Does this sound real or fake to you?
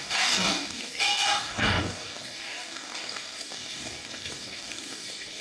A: fake